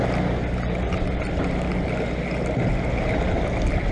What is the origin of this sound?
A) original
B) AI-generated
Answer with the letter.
A